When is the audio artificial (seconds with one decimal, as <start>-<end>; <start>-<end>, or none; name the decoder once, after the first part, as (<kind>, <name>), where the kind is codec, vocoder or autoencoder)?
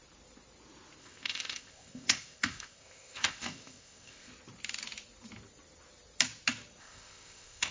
1.0-4.3 (codec, ZipCodec); 6.8-7.7